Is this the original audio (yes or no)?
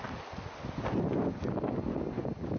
yes